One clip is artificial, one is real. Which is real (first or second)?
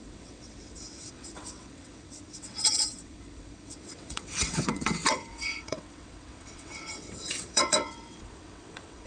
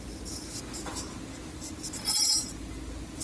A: second